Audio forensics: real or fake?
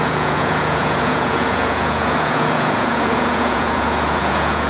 fake